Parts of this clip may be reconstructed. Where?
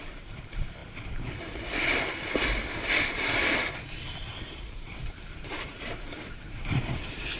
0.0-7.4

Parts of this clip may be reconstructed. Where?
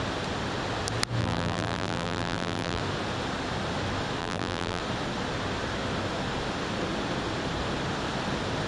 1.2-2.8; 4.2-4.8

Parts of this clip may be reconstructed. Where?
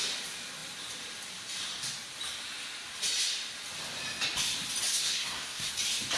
4.9-5.7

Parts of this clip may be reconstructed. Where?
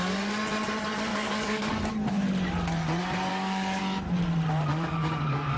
1.1-1.7; 3.3-3.8; 4.7-5.6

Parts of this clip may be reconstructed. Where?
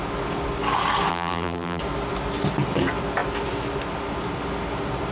1.1-1.8